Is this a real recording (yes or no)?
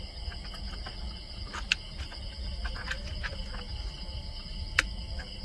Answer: yes